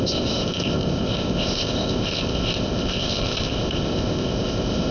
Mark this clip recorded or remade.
remade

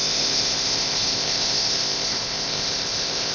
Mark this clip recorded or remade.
remade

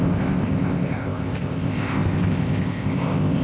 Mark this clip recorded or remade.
remade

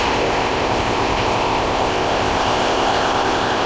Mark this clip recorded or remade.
remade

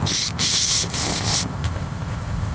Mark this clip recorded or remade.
remade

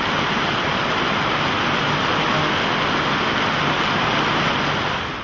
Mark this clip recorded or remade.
recorded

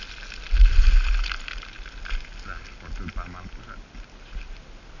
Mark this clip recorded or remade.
recorded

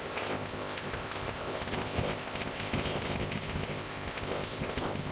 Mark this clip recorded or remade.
remade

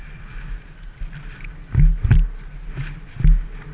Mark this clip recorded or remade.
recorded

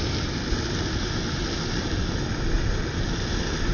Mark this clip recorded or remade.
recorded